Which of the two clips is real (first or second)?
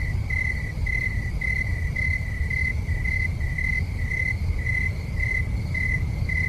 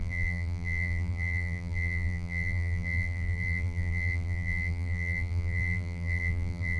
first